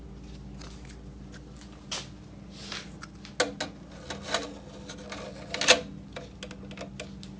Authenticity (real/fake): real